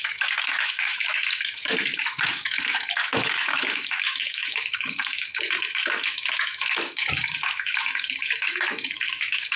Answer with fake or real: fake